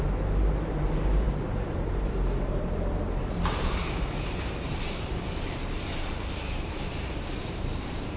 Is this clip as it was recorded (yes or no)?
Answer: no